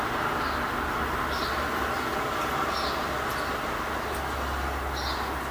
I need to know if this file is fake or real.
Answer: real